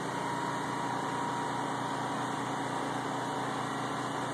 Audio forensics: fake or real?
real